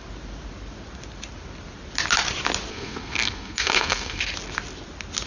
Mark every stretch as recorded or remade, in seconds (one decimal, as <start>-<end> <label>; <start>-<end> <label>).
0.0-2.7 recorded; 2.7-4.2 remade; 4.2-5.3 recorded